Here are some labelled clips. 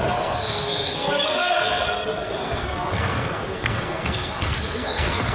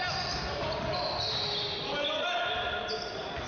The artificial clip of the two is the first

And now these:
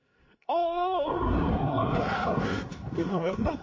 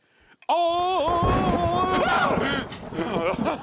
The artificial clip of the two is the first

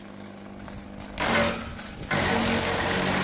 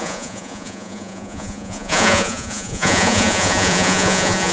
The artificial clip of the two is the second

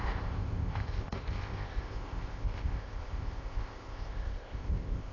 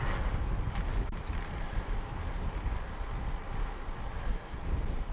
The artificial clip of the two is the first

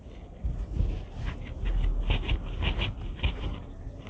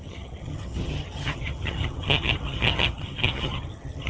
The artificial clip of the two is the second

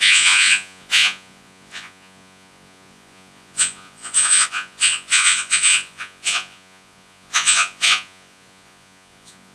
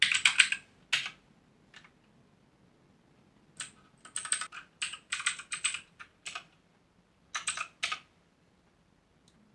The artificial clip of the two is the first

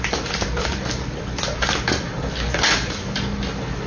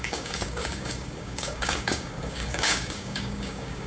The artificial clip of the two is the second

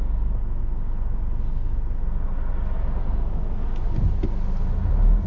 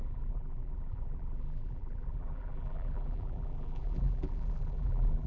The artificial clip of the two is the second